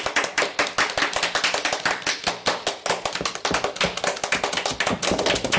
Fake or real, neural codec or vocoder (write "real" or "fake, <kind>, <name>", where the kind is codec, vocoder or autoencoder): real